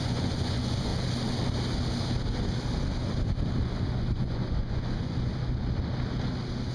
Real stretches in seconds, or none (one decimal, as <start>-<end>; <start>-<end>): 0.9-3.6; 5.3-6.7